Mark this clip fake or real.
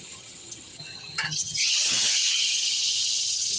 fake